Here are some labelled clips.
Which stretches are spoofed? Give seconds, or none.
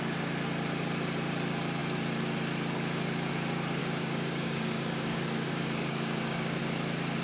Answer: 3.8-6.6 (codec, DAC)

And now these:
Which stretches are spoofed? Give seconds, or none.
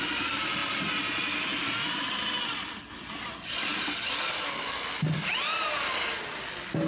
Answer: none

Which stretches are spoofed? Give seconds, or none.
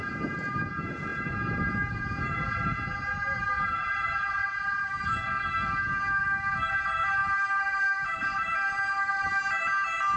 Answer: 4.8-6.7 (codec, DAC)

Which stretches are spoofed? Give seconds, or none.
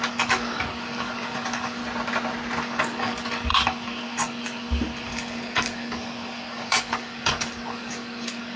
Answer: 0.0-1.8 (codec, DAC); 2.6-8.6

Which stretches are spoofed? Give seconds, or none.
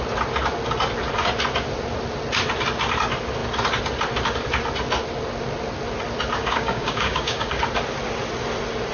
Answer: 6.4-7.6 (codec, DAC)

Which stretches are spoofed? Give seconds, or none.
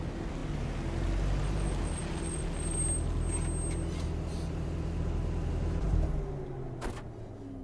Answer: none